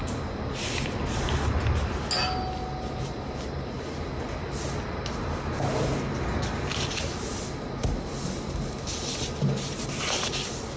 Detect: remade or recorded recorded